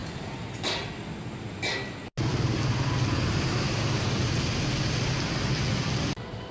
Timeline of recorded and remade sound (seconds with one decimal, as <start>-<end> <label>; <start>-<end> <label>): 0.0-6.5 recorded